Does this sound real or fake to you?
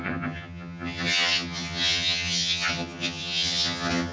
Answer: fake